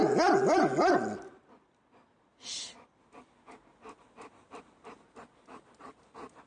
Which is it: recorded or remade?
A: recorded